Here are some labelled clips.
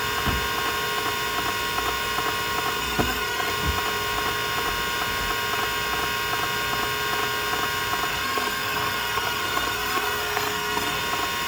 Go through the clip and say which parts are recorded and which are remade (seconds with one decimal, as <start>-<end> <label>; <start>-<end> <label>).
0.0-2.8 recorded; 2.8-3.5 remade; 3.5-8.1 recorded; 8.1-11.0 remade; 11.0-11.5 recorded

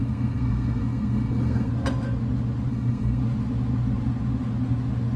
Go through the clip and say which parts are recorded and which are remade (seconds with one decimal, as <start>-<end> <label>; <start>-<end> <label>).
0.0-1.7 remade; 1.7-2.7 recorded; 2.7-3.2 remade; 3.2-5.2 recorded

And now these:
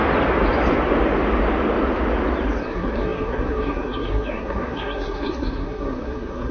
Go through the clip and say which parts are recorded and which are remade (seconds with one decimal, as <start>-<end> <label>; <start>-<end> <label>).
0.0-2.6 recorded; 2.6-6.5 remade

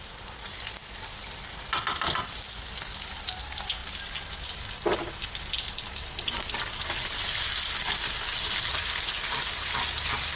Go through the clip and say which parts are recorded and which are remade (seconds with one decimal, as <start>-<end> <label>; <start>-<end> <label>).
0.0-10.4 recorded